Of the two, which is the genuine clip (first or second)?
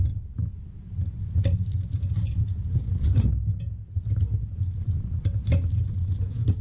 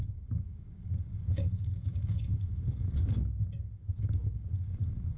first